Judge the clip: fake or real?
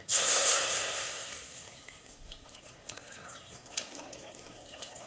fake